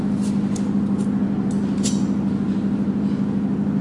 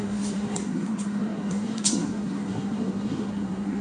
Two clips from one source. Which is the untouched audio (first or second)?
first